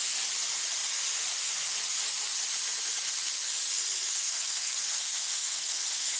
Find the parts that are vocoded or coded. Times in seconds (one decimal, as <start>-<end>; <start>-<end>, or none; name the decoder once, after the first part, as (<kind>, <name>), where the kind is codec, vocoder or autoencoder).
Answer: 4.1-6.2 (codec, SNAC)